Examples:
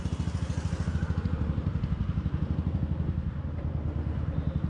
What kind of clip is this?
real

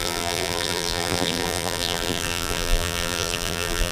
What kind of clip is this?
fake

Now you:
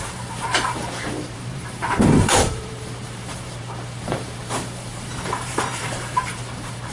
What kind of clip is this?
fake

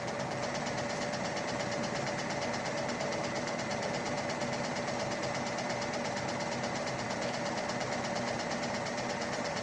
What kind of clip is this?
fake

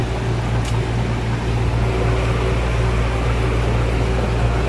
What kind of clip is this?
real